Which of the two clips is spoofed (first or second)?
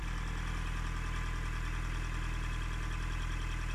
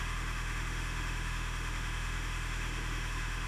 second